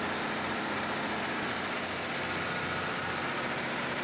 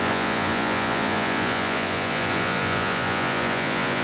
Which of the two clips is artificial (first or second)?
second